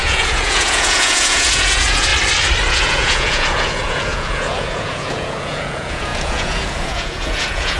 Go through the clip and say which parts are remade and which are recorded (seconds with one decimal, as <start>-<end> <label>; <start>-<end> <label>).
0.0-2.1 remade; 2.1-2.7 recorded; 2.7-7.8 remade